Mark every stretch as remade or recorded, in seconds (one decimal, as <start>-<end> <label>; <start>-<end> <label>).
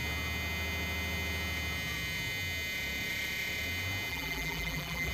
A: 0.0-4.1 recorded; 4.1-5.1 remade